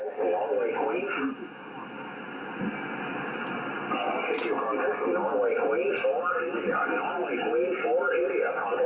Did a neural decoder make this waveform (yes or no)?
no